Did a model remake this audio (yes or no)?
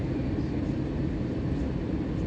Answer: no